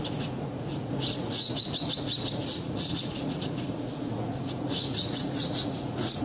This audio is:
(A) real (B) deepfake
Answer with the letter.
B